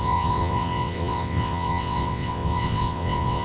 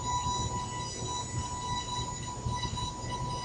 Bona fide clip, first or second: second